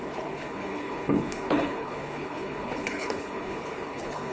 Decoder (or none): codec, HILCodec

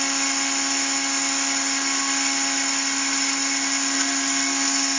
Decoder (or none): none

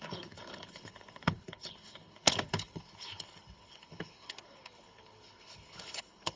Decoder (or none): codec, HILCodec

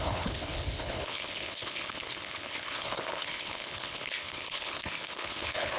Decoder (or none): codec, HILCodec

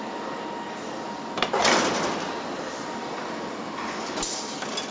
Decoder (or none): none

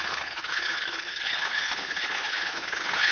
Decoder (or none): codec, HILCodec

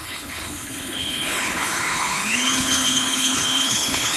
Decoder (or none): codec, HILCodec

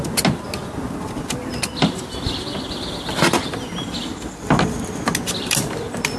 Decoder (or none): none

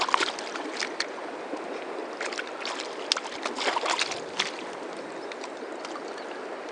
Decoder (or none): none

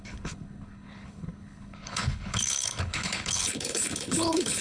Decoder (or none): codec, HILCodec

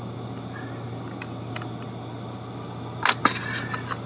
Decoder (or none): none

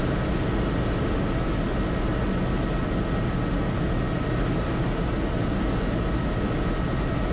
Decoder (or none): none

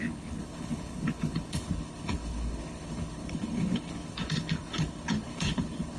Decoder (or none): codec, HILCodec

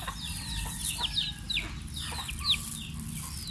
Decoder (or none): none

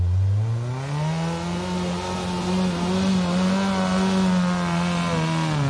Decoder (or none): none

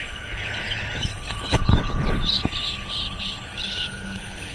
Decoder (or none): codec, HILCodec